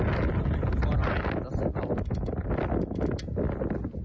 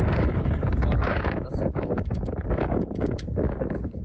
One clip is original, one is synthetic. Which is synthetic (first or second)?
second